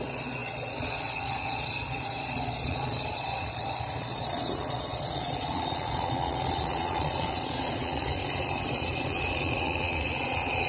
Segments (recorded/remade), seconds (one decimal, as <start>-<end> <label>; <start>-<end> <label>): 0.0-8.2 remade; 8.2-8.7 recorded; 8.7-10.7 remade